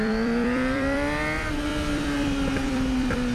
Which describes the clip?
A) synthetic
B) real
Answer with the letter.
A